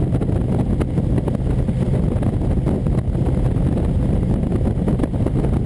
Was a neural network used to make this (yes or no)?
no